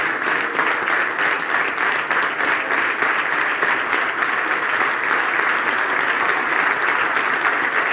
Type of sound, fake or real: real